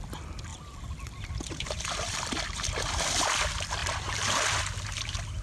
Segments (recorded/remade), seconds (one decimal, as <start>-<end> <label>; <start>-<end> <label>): 0.0-0.5 recorded; 0.5-2.4 remade; 2.4-5.4 recorded